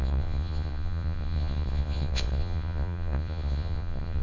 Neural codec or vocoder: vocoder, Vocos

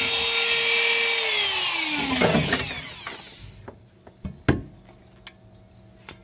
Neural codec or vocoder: none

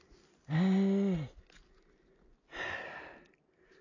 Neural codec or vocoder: none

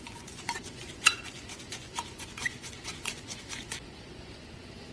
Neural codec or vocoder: vocoder, Vocos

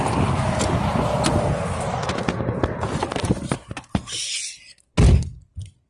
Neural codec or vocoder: none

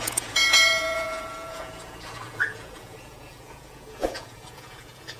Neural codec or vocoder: vocoder, Vocos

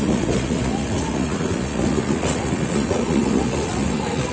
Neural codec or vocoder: vocoder, Vocos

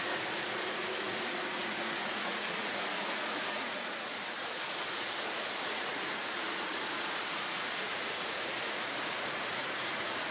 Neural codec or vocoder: vocoder, Vocos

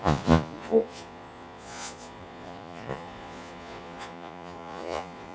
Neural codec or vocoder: vocoder, Vocos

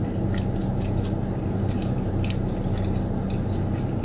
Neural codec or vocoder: none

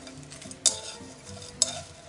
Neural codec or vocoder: none